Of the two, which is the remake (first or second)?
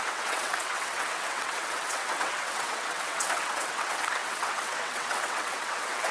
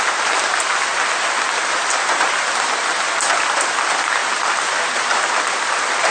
first